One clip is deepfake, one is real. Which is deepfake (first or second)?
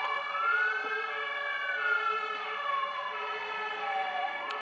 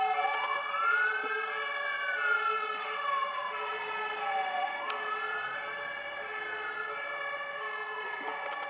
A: first